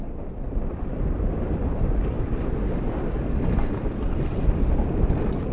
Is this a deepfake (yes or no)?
no